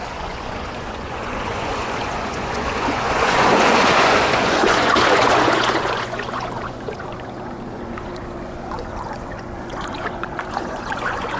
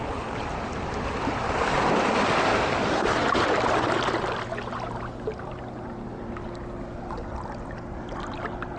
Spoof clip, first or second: first